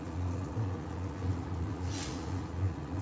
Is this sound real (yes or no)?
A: no